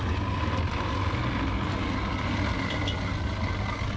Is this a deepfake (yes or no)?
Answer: no